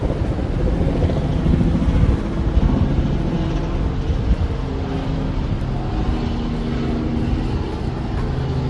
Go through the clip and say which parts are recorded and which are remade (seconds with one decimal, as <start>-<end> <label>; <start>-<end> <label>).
0.0-8.7 recorded